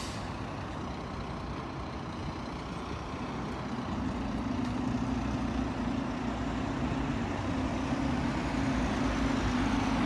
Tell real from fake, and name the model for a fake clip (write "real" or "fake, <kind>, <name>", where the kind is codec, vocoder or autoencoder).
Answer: real